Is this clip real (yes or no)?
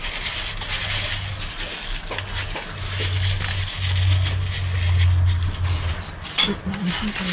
yes